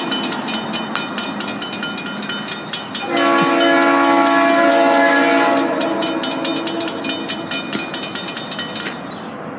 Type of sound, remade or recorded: recorded